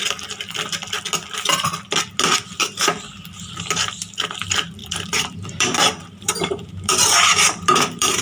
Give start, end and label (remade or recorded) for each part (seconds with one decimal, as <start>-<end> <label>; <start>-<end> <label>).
0.0-4.8 recorded; 4.8-8.2 remade